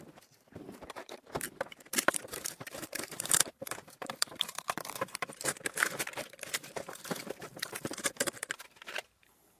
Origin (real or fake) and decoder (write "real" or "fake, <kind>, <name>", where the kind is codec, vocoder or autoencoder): fake, vocoder, BigVGAN v2